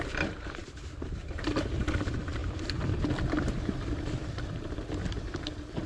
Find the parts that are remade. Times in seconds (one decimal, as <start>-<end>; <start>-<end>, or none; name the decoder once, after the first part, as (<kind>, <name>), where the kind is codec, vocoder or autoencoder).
0.0-0.6 (vocoder, BigVGAN v2); 1.2-5.9